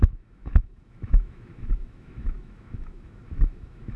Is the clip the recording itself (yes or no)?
no